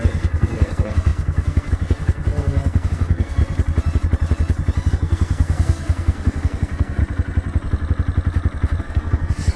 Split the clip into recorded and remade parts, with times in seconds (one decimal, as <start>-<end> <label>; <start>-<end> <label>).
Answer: 0.0-3.4 remade; 3.4-4.9 recorded; 4.9-7.0 remade; 7.0-8.8 recorded; 8.8-9.6 remade